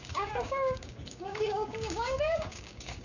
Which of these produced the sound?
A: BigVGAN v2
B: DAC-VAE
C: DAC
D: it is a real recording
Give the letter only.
C